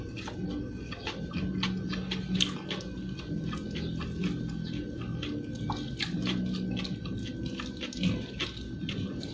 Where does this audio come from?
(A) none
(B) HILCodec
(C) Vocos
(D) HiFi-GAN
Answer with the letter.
A